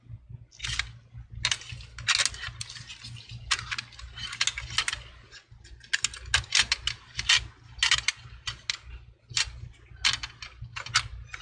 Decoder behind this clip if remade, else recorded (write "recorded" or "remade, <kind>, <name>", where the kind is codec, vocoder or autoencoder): recorded